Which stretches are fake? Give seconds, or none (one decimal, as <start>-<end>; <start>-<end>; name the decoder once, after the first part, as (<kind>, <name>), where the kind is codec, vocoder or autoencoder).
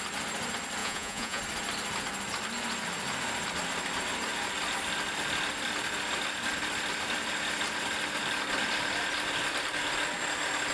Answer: 0.8-1.4 (vocoder, Vocos)